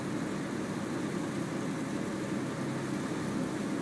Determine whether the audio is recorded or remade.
recorded